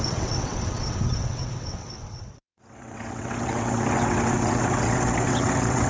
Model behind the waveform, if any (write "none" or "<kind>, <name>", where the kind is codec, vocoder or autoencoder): vocoder, WaveNeXt